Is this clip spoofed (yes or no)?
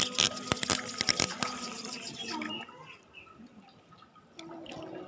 no